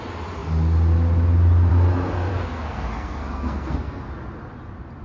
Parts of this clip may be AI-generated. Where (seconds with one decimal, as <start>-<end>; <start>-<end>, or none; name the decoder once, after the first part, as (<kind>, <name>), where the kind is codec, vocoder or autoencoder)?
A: 2.3-4.1 (codec, SNAC)